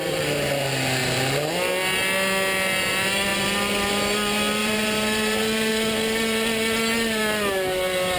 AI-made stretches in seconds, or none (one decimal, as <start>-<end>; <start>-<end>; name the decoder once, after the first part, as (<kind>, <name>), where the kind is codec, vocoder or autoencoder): 4.6-5.7 (vocoder, BigVGAN v2)